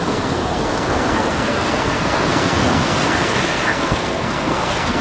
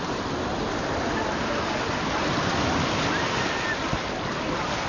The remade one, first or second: first